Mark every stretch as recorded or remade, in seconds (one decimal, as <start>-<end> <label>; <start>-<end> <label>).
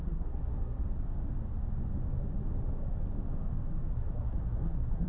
0.0-0.8 remade; 0.8-3.9 recorded; 3.9-5.1 remade